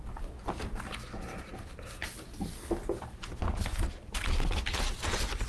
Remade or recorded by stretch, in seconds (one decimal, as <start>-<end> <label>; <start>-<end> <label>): 0.0-5.5 recorded